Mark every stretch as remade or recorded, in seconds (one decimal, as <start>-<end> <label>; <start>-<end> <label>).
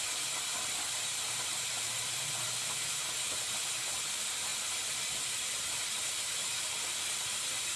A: 0.0-7.8 recorded